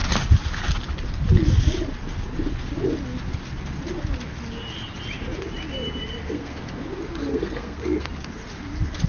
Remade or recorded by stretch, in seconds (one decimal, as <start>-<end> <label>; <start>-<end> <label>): 0.0-6.2 recorded; 6.2-6.8 remade; 6.8-7.3 recorded; 7.3-8.1 remade; 8.1-9.1 recorded